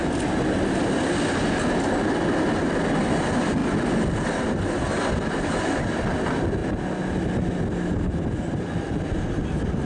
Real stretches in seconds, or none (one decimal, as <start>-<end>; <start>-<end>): 0.0-9.9